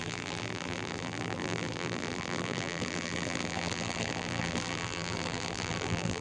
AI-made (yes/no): yes